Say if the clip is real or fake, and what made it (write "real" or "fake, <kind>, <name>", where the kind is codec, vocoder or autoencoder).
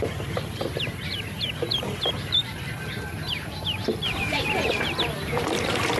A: fake, vocoder, BigVGAN v2